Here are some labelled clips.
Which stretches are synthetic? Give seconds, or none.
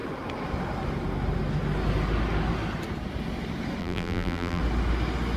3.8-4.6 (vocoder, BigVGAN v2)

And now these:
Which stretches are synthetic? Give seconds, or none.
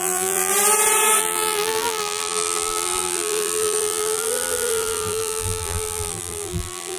0.0-0.5 (vocoder, BigVGAN v2); 1.2-7.0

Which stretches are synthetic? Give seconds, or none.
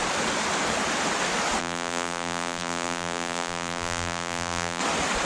1.6-4.8 (vocoder, BigVGAN v2)